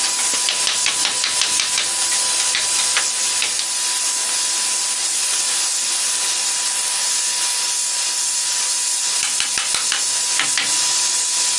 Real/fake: real